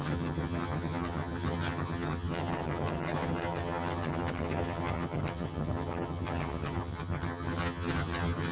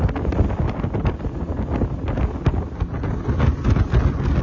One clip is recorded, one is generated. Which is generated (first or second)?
first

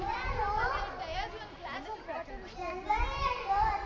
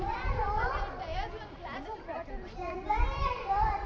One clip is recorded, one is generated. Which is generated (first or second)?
second